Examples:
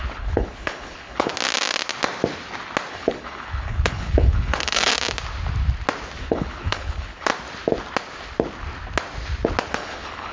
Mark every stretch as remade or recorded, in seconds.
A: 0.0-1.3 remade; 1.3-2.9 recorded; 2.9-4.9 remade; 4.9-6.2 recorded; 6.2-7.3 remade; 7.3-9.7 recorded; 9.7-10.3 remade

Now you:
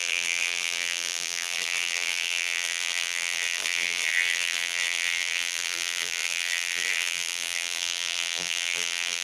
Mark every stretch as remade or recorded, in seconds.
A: 0.0-9.2 remade

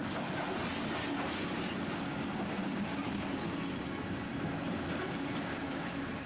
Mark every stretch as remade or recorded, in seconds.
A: 0.0-2.6 recorded; 2.6-3.4 remade; 3.4-5.5 recorded; 5.5-6.3 remade

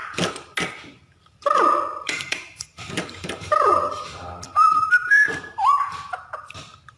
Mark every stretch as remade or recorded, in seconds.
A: 0.0-1.9 recorded; 1.9-6.1 remade; 6.1-7.0 recorded

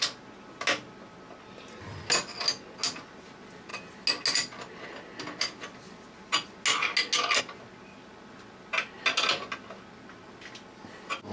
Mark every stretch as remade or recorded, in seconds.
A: 0.0-11.3 recorded